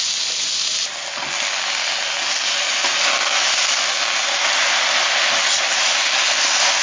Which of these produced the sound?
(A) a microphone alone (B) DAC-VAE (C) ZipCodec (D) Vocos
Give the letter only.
A